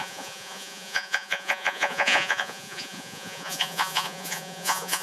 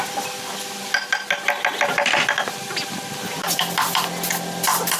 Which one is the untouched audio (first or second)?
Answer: second